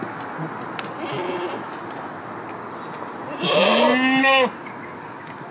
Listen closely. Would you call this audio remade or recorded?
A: recorded